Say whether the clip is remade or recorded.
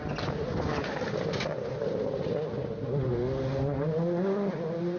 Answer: recorded